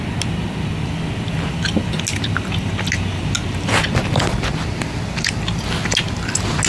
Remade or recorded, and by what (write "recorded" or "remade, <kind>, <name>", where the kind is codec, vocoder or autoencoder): recorded